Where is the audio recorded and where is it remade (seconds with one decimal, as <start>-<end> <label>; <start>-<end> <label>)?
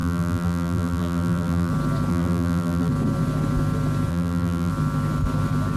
0.0-1.7 remade; 1.7-2.1 recorded; 2.1-2.9 remade; 2.9-4.1 recorded; 4.1-4.7 remade; 4.7-5.8 recorded